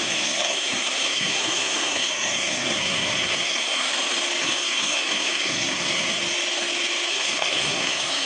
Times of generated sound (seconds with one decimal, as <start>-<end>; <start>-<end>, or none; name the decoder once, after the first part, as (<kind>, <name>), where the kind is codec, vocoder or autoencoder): 0.0-3.9 (codec, SNAC); 4.4-6.2; 7.1-8.3